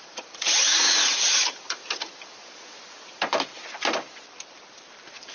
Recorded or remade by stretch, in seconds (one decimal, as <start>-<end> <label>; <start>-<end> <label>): 0.0-1.8 remade; 1.8-5.3 recorded